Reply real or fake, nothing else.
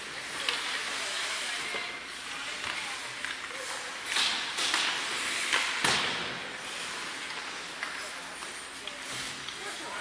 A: real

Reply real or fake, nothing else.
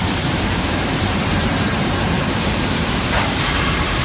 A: fake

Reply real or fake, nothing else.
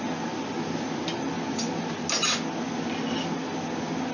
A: real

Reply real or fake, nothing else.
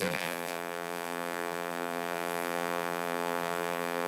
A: fake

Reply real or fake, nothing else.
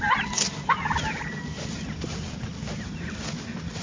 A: real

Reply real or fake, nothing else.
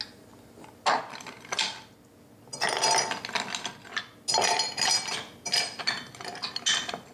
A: real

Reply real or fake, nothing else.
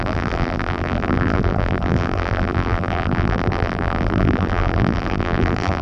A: fake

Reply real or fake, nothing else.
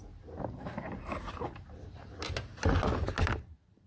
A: real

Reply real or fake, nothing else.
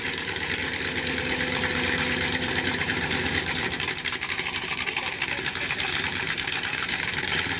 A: fake